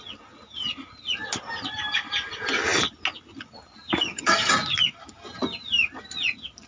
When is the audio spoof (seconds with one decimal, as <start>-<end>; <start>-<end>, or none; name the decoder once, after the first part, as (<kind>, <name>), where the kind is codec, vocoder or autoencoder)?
4.0-4.5 (vocoder, HiFi-GAN)